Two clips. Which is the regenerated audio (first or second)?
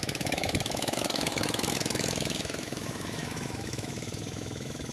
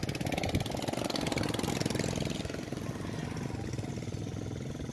first